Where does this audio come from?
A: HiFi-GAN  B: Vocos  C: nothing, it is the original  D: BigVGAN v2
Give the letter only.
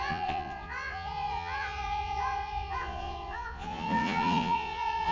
B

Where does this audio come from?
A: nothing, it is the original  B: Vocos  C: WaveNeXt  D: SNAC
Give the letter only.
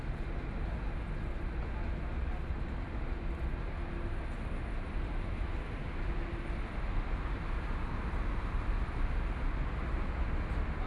A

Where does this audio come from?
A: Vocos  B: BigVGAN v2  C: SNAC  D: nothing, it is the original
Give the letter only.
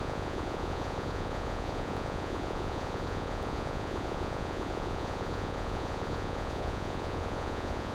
A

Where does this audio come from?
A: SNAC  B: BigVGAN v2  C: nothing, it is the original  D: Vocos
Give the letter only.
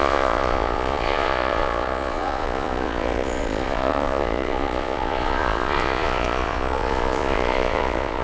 D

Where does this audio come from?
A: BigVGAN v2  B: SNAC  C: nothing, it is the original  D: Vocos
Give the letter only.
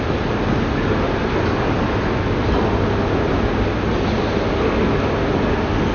C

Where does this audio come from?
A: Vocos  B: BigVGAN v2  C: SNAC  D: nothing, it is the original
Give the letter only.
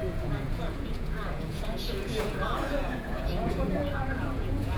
A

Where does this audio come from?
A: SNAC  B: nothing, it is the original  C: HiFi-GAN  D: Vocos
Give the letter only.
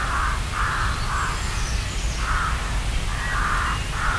B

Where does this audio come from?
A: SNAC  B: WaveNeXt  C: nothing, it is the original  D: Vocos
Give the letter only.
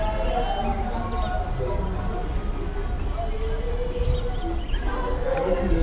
C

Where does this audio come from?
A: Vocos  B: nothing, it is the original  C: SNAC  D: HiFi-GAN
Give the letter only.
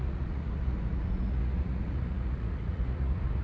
A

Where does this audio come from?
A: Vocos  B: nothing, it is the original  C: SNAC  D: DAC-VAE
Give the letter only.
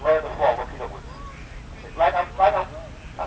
B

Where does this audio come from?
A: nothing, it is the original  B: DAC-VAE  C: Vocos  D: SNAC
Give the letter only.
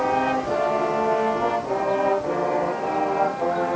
A